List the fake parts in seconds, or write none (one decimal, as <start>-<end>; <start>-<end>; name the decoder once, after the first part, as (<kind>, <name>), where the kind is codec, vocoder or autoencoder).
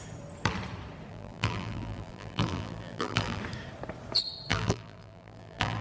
1.1-3.4 (vocoder, BigVGAN v2); 4.5-5.8